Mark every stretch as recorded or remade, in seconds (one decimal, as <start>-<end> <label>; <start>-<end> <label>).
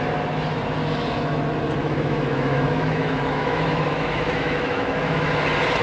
0.0-1.8 recorded; 1.8-5.3 remade; 5.3-5.8 recorded